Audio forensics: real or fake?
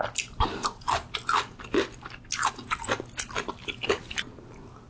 real